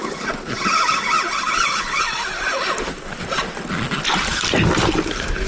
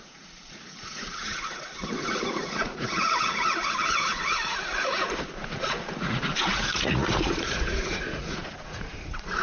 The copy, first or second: second